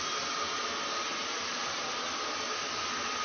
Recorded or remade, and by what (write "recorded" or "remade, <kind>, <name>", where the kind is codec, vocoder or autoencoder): recorded